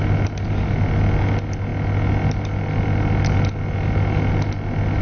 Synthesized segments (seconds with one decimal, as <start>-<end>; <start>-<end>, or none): none